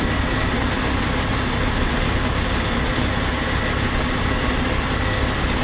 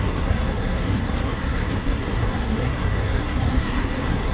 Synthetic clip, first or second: second